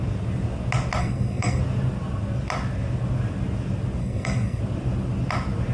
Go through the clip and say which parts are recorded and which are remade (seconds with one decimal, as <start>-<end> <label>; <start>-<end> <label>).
0.0-1.0 recorded; 1.0-1.6 remade; 1.6-4.0 recorded; 4.0-4.6 remade; 4.6-5.7 recorded

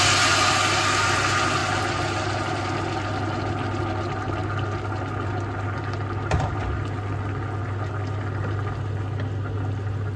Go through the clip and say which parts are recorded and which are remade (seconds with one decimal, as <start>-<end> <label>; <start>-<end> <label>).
0.0-10.2 recorded